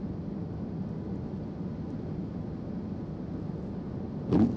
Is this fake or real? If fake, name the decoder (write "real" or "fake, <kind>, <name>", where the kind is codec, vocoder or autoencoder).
real